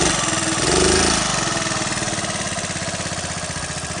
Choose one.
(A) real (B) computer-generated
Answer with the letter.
A